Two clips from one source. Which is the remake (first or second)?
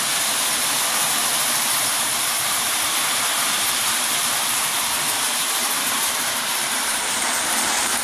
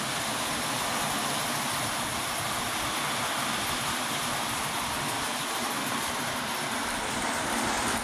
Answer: first